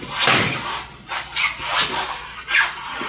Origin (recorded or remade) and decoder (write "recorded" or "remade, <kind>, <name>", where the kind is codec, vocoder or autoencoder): recorded